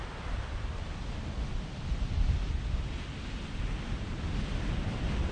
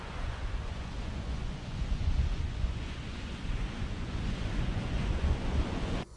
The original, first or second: first